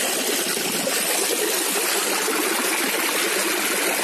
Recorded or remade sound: recorded